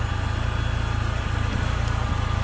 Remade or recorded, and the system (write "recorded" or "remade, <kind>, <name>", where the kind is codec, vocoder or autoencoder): recorded